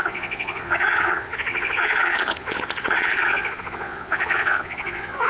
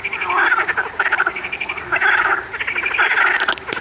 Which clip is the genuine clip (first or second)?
second